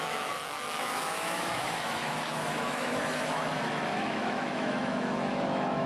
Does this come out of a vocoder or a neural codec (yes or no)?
yes